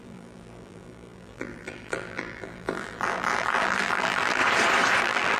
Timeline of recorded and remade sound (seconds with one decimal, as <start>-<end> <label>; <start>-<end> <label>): 0.0-4.4 remade; 4.4-5.0 recorded; 5.0-5.4 remade